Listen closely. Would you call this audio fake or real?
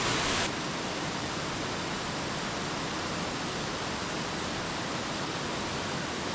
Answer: real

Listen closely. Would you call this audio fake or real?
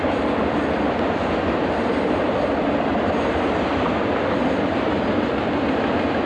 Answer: fake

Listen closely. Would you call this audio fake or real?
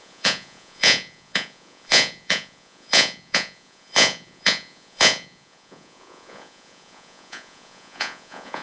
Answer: fake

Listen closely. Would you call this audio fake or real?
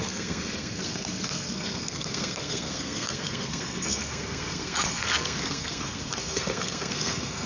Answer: fake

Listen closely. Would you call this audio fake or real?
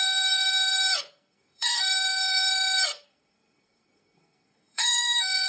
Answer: fake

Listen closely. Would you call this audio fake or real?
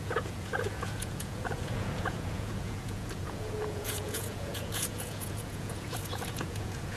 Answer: fake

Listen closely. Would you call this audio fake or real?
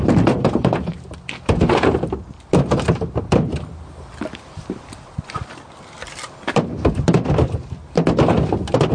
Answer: real